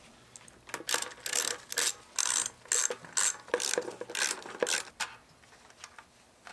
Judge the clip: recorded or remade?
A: recorded